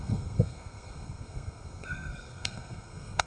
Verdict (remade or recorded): remade